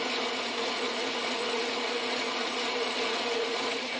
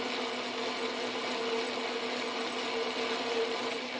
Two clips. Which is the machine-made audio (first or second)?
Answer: first